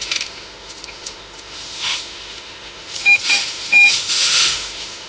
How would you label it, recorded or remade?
remade